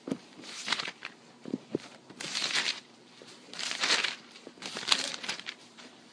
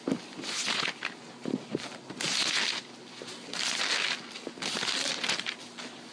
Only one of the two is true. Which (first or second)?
second